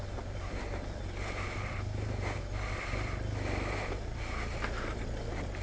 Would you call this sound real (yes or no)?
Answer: yes